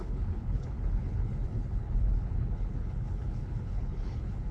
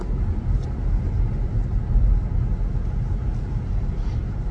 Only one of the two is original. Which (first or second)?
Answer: second